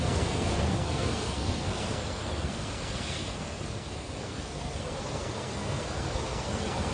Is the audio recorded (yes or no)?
no